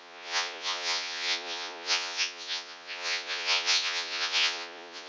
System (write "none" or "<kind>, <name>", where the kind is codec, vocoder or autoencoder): vocoder, Vocos